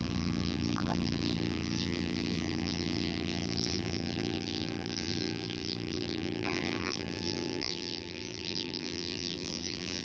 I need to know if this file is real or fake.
fake